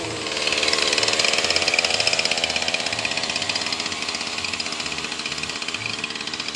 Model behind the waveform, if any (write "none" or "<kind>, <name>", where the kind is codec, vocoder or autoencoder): none